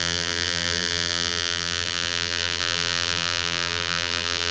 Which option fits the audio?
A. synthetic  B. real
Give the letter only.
A